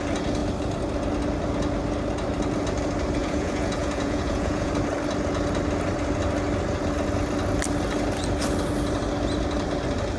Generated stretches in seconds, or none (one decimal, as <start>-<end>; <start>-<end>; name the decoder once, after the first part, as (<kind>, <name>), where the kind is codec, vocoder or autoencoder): 3.2-4.7 (vocoder, Vocos)